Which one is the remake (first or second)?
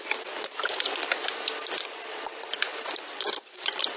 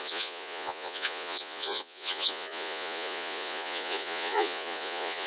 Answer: second